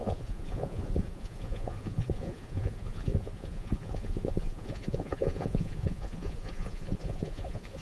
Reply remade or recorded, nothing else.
remade